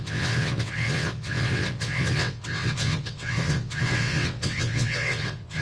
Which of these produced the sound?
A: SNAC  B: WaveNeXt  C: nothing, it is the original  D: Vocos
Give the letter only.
B